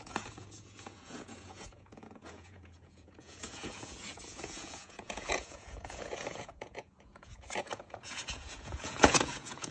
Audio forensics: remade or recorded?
remade